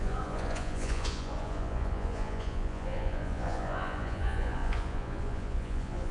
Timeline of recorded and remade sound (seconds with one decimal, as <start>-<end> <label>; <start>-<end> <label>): 0.0-6.1 remade